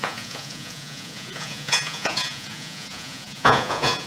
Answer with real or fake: fake